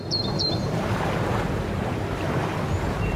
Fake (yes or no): yes